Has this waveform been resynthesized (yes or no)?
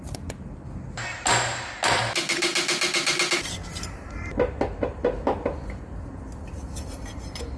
no